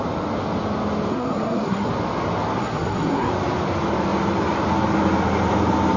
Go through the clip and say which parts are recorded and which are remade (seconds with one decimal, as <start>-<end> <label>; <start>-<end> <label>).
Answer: 0.0-1.1 recorded; 1.1-1.9 remade; 1.9-2.6 recorded; 2.6-3.3 remade; 3.3-6.0 recorded